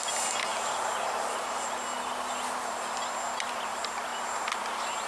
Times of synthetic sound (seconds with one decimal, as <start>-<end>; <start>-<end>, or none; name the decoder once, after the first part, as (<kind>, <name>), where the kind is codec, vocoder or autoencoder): 0.5-1.4 (vocoder, BigVGAN v2)